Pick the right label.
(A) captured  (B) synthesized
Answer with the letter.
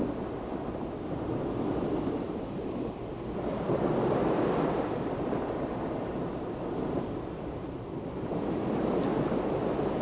A